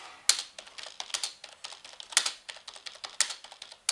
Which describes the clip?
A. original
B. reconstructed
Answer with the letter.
A